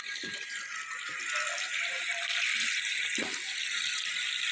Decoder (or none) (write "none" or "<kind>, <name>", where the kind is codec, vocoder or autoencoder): none